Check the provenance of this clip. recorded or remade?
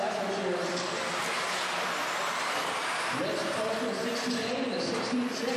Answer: recorded